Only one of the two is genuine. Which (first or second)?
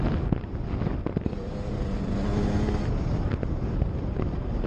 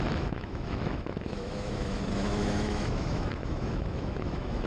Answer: first